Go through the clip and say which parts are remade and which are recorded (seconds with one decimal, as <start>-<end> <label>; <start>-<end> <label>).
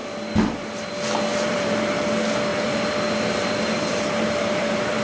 0.0-1.3 recorded; 1.3-2.1 remade; 2.1-2.5 recorded; 2.5-5.0 remade